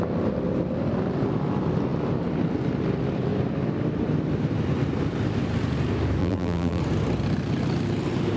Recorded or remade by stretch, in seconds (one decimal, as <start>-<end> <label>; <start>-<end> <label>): 0.0-6.2 recorded; 6.2-6.8 remade; 6.8-8.4 recorded